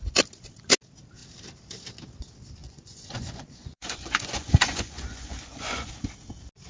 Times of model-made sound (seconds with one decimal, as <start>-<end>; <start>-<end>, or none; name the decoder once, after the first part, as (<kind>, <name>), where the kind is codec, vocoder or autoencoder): 2.6-5.9 (vocoder, Vocos)